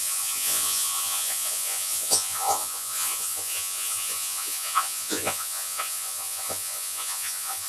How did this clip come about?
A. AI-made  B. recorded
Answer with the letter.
A